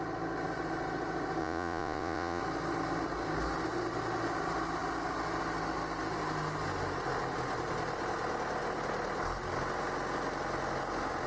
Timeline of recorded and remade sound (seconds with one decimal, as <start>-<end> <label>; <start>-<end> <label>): 0.0-1.4 recorded; 1.4-2.4 remade; 2.4-11.3 recorded